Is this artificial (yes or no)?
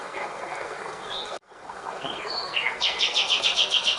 yes